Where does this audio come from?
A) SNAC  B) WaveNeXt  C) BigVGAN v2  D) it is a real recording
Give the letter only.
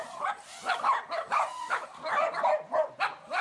C